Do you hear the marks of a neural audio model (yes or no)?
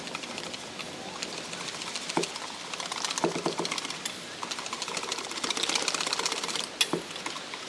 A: no